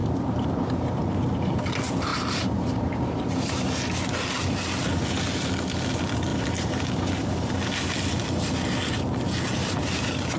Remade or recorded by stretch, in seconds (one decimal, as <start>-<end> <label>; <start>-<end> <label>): 0.0-1.5 remade; 1.5-2.1 recorded; 2.1-3.7 remade; 3.7-6.3 recorded; 6.3-7.5 remade; 7.5-9.6 recorded; 9.6-10.4 remade